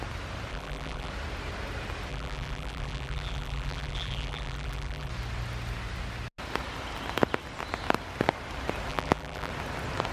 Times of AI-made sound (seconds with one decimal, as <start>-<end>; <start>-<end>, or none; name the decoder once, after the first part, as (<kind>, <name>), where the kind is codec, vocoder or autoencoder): 0.5-1.1 (vocoder, BigVGAN v2); 2.1-5.1; 8.9-9.5